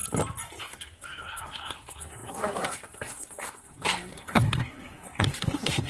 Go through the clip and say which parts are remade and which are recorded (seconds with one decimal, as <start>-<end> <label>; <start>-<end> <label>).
0.0-0.6 recorded; 0.6-5.9 remade